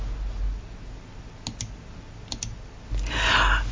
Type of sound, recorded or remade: recorded